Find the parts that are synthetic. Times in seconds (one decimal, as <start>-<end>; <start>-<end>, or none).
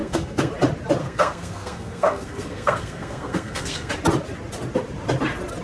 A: 0.0-0.5; 1.0-3.9